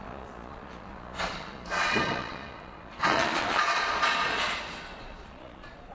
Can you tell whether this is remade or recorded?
remade